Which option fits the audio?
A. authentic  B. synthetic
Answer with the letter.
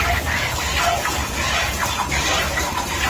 A